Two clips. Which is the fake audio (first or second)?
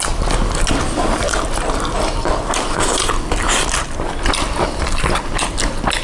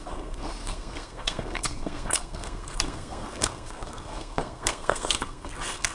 second